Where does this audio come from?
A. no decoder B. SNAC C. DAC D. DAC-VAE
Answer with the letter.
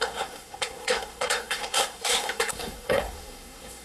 B